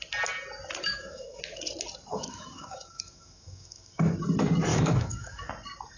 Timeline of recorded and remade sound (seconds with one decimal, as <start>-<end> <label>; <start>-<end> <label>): 0.0-0.9 recorded; 0.9-1.4 remade; 1.4-2.1 recorded; 2.1-4.1 remade; 4.1-4.7 recorded; 4.7-5.5 remade; 5.5-6.0 recorded